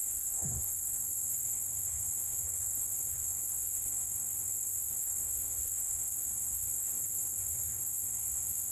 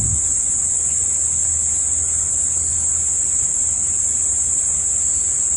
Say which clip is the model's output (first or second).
first